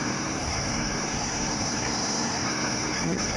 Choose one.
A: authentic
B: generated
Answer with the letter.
B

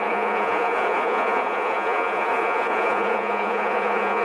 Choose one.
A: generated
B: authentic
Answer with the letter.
A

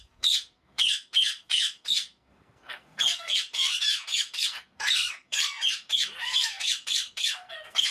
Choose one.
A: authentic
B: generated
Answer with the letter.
B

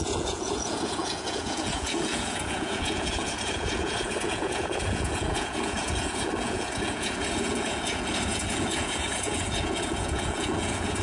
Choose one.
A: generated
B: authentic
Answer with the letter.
A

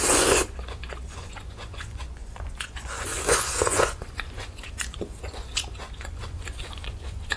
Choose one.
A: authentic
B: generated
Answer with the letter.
B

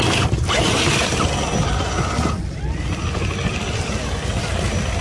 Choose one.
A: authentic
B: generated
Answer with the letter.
A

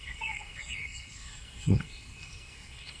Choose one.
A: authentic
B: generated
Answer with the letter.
B